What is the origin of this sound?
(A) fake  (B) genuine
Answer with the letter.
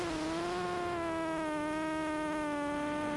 B